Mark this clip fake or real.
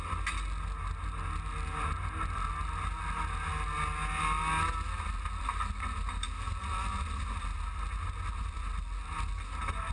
real